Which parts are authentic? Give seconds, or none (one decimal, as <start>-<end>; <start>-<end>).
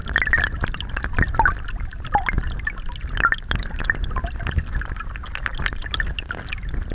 0.0-6.9